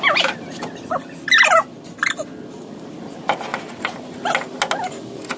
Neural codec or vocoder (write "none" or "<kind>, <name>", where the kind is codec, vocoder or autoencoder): none